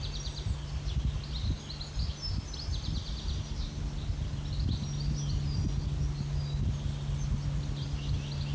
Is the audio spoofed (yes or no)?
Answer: no